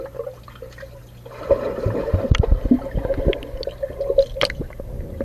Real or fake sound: real